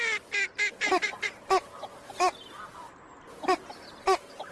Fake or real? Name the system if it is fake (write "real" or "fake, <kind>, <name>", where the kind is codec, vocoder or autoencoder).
real